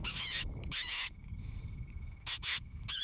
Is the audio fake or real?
fake